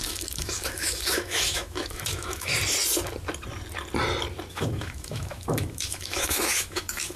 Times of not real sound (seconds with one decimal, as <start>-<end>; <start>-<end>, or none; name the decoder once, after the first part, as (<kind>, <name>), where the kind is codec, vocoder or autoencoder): 0.0-2.5 (autoencoder, DAC-VAE); 4.5-7.2